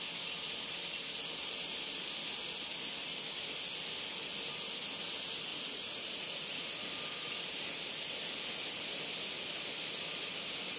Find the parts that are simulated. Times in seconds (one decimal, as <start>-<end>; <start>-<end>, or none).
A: 5.5-6.9